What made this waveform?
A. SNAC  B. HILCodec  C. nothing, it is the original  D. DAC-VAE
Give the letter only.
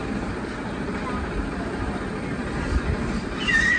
C